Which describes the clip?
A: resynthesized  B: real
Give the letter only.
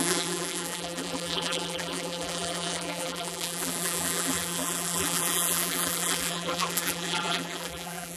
A